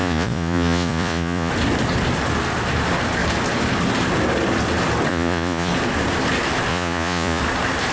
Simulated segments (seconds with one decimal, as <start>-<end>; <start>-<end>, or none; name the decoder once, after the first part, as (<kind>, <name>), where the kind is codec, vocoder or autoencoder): 0.0-1.5 (vocoder, Vocos); 5.1-5.7; 6.7-7.4